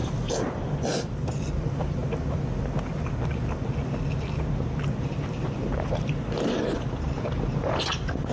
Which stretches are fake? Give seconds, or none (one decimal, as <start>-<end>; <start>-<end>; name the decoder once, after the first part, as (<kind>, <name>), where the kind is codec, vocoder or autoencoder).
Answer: 0.0-2.0 (vocoder, BigVGAN v2); 5.0-8.3